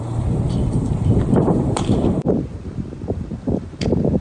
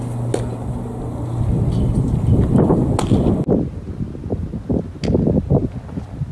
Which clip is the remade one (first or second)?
first